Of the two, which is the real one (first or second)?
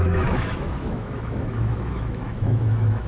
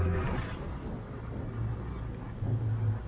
second